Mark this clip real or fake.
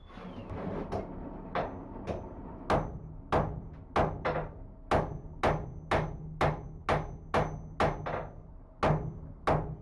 real